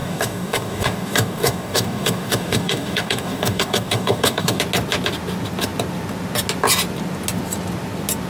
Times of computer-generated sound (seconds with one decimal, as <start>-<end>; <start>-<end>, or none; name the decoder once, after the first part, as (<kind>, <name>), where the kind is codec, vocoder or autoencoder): 0.0-4.6 (codec, DAC)